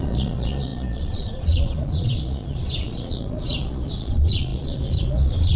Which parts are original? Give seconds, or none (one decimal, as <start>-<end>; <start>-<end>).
none

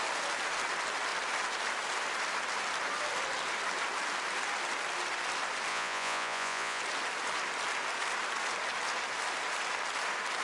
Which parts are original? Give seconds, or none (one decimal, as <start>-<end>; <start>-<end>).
0.0-5.7; 6.8-10.4

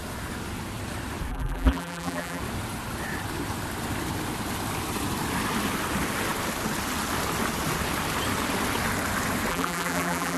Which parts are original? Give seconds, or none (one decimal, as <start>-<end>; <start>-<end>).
0.0-1.3; 2.4-9.5

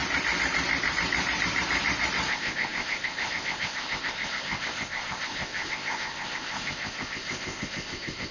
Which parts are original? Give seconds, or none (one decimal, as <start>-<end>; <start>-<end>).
0.0-2.3

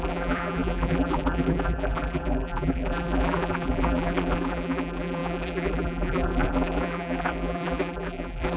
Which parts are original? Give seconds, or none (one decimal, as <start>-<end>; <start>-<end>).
none

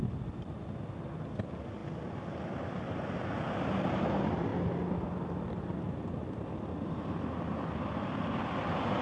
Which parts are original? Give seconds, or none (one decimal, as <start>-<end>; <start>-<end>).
0.0-9.0